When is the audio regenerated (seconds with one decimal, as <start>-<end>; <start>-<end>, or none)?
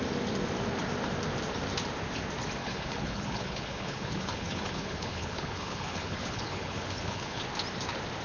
2.6-7.4